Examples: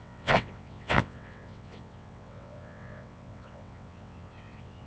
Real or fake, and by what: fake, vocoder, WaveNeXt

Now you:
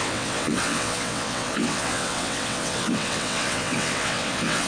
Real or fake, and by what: fake, vocoder, WaveNeXt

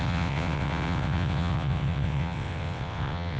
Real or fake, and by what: fake, vocoder, WaveNeXt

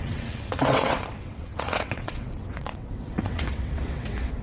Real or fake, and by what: fake, vocoder, WaveNeXt